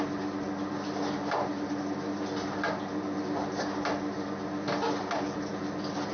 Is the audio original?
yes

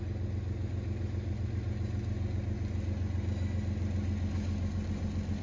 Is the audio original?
yes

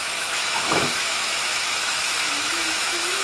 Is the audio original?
no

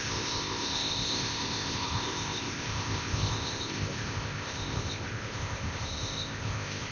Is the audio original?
no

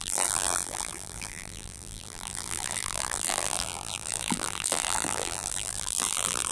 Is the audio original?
no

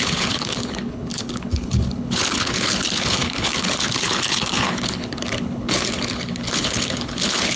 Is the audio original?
no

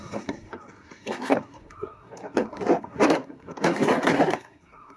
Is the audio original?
no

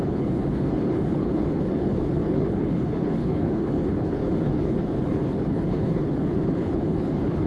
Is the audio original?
no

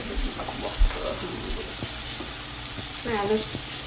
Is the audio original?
yes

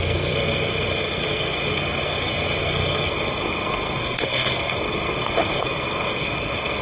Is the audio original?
no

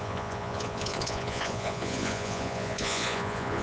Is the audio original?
no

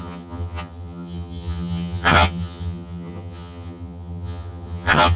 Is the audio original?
no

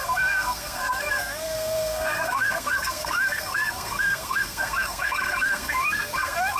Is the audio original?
no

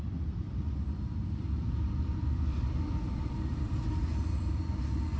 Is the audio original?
no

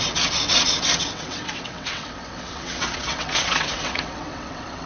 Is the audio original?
no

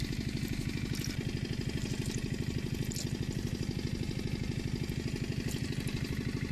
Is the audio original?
yes